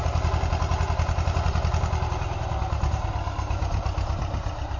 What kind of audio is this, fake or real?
real